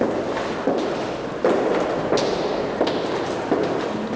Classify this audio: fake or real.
real